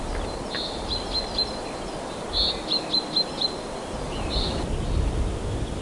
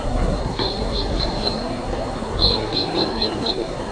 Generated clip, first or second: second